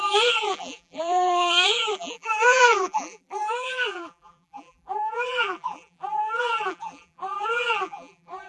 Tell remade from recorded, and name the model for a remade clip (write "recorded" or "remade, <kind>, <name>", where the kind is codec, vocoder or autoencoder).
remade, vocoder, BigVGAN v2